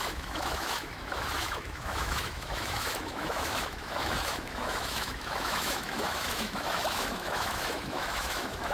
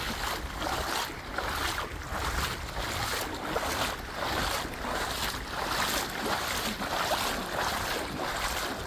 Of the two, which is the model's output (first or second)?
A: first